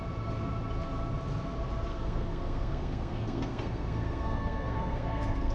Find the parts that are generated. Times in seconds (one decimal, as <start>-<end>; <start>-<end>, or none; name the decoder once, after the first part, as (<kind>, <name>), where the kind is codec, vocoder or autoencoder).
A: 1.9-5.5 (codec, SNAC)

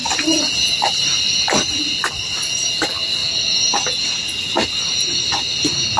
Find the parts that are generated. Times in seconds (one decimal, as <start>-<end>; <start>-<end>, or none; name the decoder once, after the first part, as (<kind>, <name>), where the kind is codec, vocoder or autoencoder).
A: 0.0-1.8 (vocoder, BigVGAN v2)

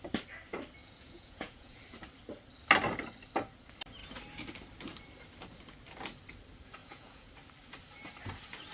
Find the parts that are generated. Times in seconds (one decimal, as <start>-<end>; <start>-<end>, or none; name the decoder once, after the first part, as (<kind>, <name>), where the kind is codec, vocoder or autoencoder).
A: 0.8-1.8 (vocoder, Vocos); 6.8-7.3

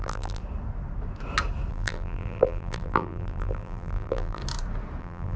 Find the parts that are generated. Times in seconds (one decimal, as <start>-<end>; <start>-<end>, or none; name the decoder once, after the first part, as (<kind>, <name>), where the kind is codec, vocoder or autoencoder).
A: 0.0-0.4 (vocoder, BigVGAN v2); 1.7-4.4; 5.0-5.4

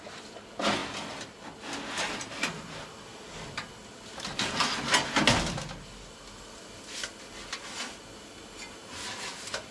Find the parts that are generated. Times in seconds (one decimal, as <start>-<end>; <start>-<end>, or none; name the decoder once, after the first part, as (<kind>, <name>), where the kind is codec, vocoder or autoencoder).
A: none

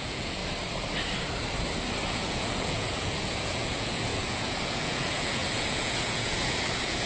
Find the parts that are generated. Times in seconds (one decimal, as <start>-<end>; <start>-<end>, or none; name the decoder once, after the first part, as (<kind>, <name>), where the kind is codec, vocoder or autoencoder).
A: 0.0-0.4 (vocoder, Vocos); 2.1-7.1